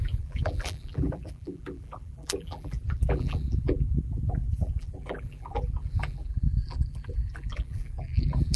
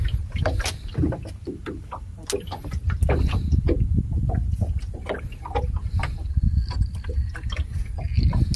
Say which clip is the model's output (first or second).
first